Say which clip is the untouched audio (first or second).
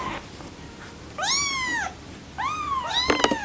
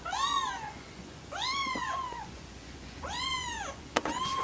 first